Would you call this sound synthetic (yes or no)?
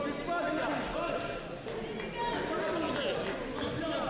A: no